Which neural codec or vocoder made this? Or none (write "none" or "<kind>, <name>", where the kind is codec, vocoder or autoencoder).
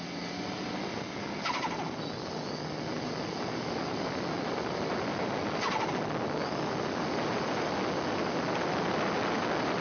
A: none